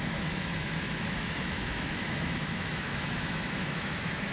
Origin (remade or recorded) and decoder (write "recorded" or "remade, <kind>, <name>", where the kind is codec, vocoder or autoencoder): remade, autoencoder, DAC-VAE